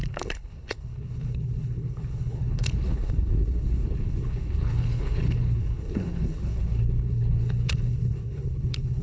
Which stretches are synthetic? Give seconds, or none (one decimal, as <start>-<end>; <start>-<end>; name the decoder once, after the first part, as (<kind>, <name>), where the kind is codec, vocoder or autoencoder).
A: 0.0-9.0 (codec, HILCodec)